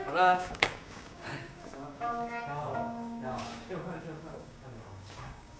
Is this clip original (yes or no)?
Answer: no